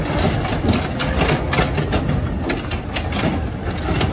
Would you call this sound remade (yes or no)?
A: no